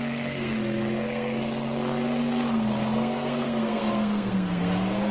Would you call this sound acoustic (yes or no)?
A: no